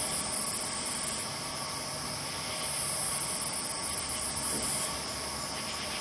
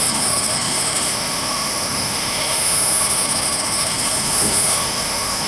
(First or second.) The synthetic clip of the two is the second